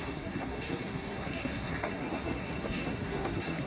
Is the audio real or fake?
fake